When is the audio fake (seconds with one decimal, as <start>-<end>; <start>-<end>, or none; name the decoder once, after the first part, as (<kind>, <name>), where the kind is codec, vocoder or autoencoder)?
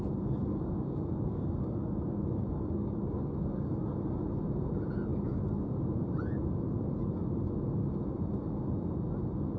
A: 0.5-3.8 (codec, DAC)